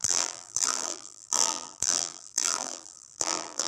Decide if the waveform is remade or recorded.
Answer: remade